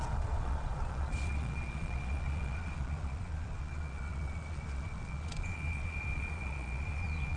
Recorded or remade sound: remade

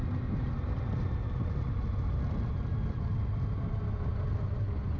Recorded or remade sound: recorded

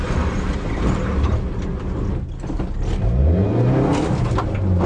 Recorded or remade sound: recorded